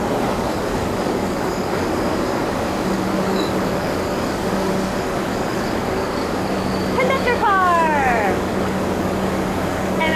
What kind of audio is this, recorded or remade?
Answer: remade